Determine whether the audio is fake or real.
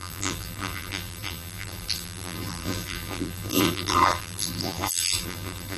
fake